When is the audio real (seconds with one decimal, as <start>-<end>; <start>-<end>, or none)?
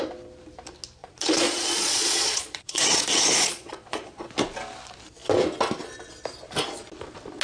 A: 0.0-1.0; 4.3-7.4